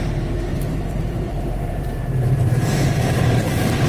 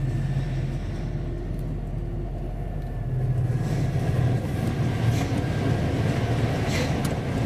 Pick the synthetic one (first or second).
first